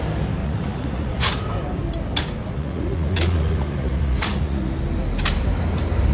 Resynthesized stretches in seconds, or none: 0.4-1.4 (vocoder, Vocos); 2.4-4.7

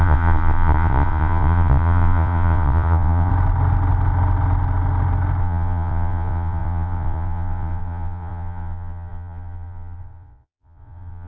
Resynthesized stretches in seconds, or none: 0.0-3.3 (vocoder, Vocos); 5.4-11.3

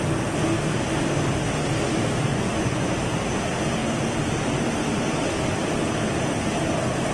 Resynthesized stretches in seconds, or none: 2.3-2.9 (vocoder, Vocos)

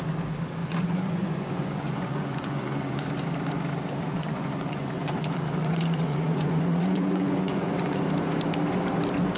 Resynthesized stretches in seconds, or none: 0.6-3.1 (vocoder, Vocos); 4.1-8.0